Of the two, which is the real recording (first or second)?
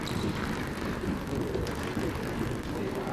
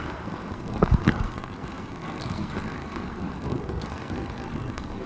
first